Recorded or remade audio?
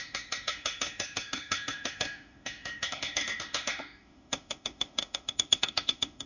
remade